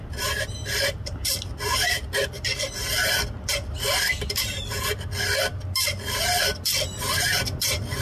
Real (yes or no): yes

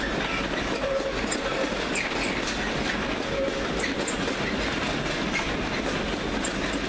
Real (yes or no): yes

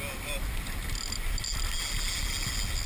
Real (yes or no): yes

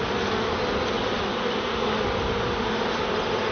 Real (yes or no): yes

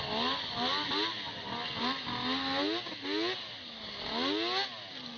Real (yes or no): yes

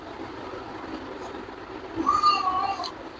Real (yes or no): yes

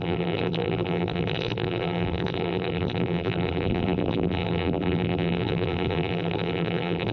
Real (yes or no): no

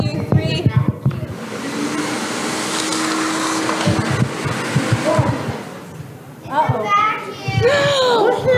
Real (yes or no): yes